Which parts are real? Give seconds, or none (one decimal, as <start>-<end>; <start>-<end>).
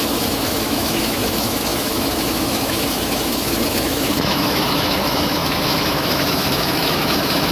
none